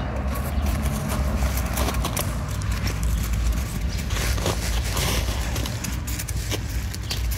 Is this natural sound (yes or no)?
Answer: yes